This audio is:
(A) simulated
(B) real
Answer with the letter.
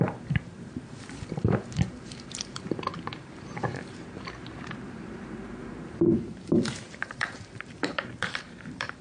A